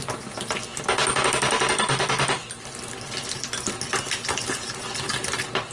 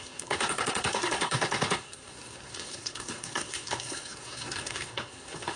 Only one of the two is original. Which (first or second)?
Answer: first